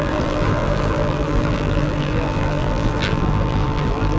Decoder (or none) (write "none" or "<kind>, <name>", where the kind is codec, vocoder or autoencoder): vocoder, BigVGAN v2